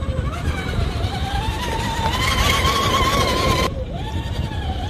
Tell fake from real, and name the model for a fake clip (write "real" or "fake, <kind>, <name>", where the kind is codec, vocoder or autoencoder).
fake, vocoder, BigVGAN v2